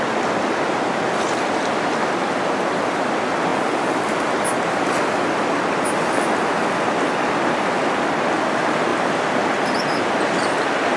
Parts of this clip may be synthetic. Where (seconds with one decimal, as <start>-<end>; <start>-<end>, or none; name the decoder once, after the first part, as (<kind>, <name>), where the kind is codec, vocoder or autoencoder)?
none